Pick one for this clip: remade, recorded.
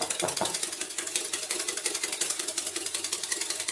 remade